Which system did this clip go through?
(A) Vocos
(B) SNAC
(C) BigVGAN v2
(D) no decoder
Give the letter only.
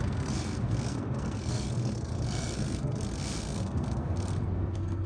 B